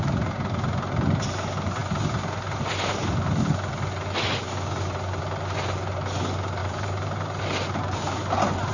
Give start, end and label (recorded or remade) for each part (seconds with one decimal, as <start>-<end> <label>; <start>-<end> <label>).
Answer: 0.0-6.6 recorded; 6.6-7.4 remade; 7.4-8.7 recorded